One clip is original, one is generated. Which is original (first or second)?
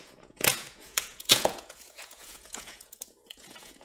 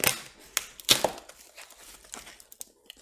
second